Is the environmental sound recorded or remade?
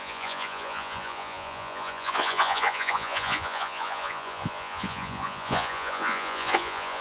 remade